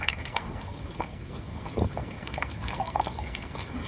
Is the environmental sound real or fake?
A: fake